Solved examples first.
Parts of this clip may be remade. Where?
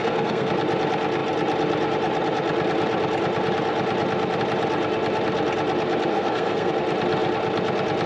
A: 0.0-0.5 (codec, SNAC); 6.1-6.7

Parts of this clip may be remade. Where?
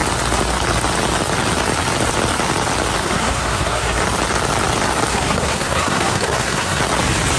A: 3.0-4.0 (codec, SNAC); 5.1-6.8